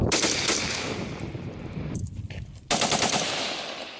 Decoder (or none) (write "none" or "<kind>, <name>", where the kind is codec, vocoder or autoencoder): vocoder, BigVGAN v2